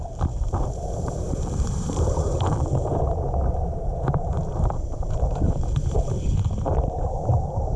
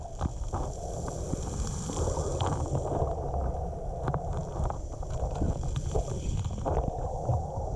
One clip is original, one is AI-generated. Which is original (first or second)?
second